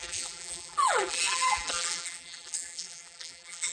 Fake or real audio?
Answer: fake